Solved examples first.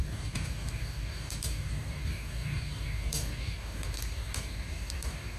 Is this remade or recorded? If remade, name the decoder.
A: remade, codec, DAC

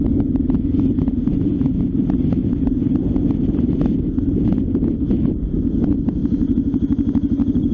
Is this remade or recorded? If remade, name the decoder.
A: recorded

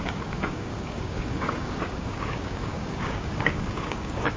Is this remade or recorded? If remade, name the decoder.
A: remade, codec, DAC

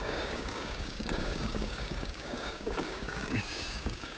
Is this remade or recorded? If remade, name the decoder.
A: remade, codec, DAC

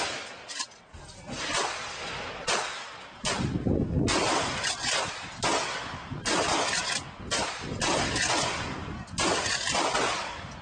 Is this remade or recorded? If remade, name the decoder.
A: recorded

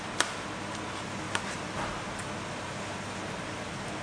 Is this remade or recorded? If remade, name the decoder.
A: recorded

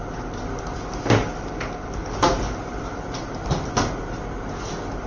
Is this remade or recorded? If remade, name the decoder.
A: recorded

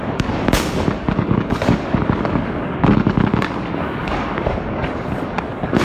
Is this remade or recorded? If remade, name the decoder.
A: remade, codec, DAC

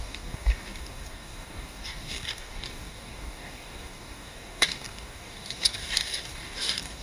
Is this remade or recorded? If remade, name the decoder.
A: remade, codec, DAC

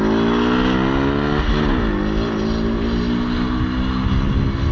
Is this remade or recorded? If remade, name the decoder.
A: recorded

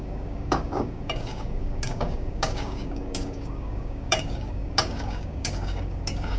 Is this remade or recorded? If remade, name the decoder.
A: remade, codec, DAC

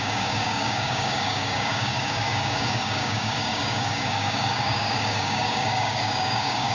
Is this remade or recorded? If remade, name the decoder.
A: remade, codec, DAC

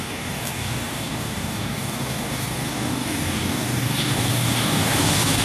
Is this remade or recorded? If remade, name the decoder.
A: remade, codec, DAC